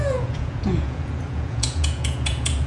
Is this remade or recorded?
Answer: remade